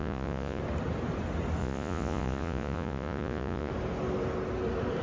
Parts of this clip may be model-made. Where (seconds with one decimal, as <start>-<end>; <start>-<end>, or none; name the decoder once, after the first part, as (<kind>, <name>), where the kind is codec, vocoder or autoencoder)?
0.0-0.6 (vocoder, Vocos); 1.6-3.7

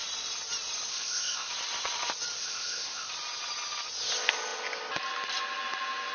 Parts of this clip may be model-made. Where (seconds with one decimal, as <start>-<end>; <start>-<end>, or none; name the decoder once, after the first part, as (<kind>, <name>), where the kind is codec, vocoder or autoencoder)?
0.9-1.5 (codec, ZipCodec); 2.4-3.1

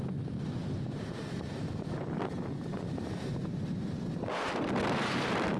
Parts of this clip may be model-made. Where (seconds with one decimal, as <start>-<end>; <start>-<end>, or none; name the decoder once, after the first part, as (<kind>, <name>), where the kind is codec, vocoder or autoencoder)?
0.6-1.9 (vocoder, BigVGAN v2); 3.4-4.7